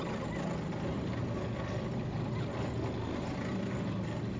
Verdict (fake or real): real